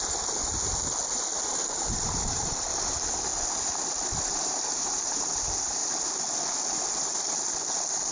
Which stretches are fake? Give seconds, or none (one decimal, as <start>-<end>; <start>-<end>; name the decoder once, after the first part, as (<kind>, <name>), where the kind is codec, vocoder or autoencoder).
0.0-0.4 (vocoder, BigVGAN v2); 1.8-2.7; 4.2-5.8